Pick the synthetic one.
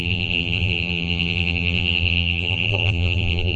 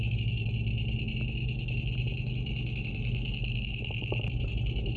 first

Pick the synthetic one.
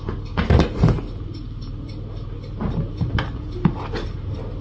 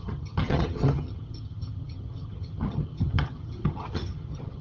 second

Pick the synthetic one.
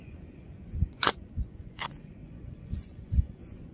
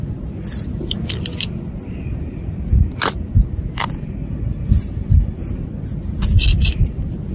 first